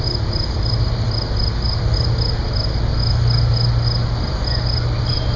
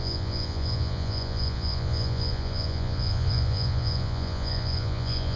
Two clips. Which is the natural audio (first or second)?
first